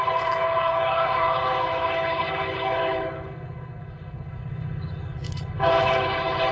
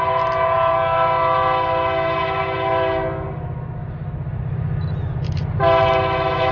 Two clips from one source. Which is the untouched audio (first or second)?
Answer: second